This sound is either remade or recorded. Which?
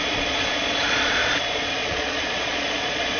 remade